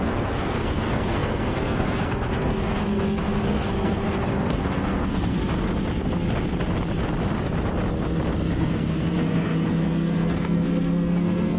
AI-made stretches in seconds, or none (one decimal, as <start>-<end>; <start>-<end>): 0.0-5.4; 8.5-11.6